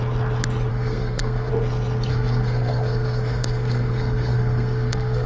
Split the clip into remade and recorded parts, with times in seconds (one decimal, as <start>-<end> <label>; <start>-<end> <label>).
0.0-0.7 recorded; 0.7-1.5 remade; 1.5-2.1 recorded; 2.1-5.3 remade